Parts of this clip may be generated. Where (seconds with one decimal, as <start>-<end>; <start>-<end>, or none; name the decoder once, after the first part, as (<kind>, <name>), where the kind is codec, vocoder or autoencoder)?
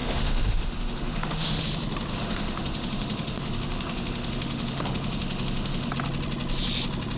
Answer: 0.0-1.6 (autoencoder, DAC-VAE); 2.1-5.9